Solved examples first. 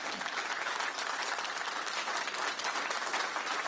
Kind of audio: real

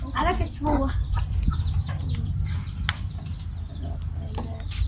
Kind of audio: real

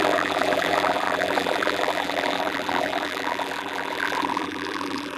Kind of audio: fake